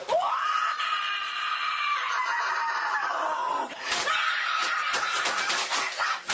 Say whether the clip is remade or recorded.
recorded